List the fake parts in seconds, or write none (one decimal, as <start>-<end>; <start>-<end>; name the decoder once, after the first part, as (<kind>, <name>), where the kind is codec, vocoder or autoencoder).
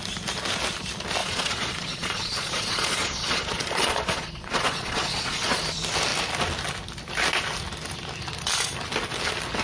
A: 1.2-5.6 (vocoder, Vocos)